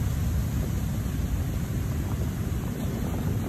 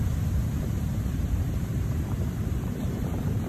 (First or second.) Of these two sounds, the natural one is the first